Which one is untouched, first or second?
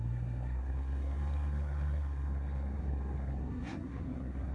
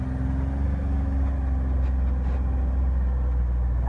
second